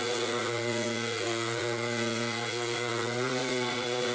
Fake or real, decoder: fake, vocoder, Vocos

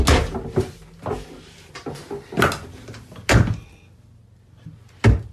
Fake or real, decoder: real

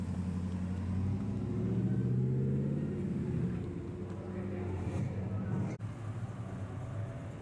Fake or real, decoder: real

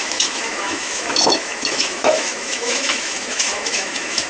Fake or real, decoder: fake, autoencoder, DAC-VAE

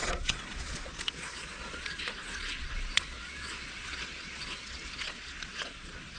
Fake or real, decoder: fake, vocoder, Vocos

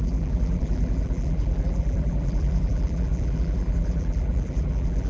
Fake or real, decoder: fake, vocoder, BigVGAN v2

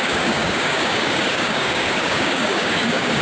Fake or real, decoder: fake, codec, DAC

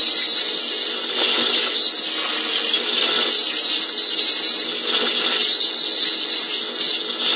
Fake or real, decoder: real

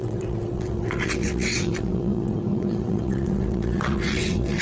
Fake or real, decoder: fake, vocoder, WaveNeXt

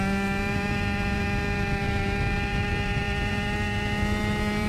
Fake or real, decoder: fake, vocoder, BigVGAN v2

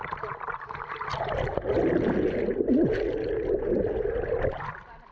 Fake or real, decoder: real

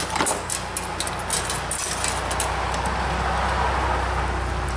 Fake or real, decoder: real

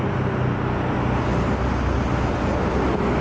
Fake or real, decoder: real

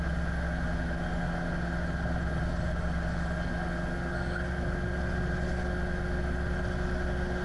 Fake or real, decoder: real